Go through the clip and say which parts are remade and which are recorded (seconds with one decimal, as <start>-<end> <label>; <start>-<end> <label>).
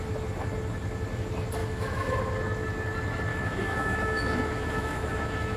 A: 0.0-1.6 recorded; 1.6-2.2 remade; 2.2-3.3 recorded; 3.3-5.6 remade